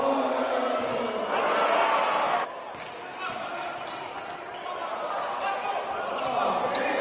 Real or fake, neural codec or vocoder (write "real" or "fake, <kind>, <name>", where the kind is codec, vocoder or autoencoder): real